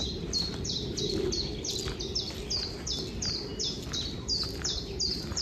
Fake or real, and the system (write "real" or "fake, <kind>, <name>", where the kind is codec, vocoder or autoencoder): real